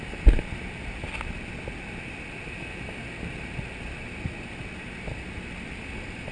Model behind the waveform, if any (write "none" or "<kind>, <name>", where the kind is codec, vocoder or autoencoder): none